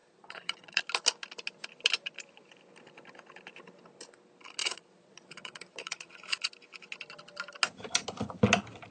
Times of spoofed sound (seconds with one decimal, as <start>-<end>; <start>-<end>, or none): 0.0-0.8; 4.6-6.5